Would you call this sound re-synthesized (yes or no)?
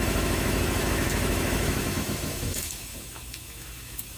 yes